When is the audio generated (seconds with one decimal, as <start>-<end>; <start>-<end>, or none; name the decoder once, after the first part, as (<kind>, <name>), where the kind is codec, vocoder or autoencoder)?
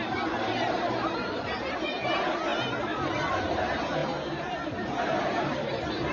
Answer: 0.0-2.5 (vocoder, BigVGAN v2); 3.3-5.5